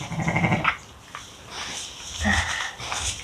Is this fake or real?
real